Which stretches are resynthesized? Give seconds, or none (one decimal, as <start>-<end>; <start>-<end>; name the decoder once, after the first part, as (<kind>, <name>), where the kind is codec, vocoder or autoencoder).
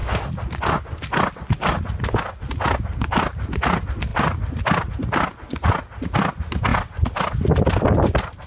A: none